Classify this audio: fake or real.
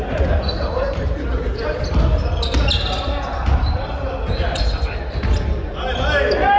real